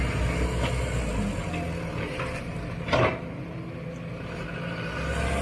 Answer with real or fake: real